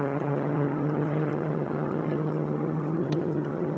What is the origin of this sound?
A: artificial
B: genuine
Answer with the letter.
A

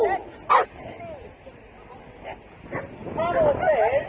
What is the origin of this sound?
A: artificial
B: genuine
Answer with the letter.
B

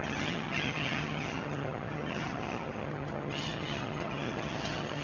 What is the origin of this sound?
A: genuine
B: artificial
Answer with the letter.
B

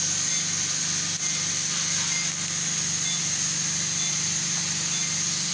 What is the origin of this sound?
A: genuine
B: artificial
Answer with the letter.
A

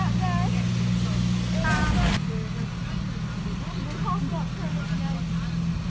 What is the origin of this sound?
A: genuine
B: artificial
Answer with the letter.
A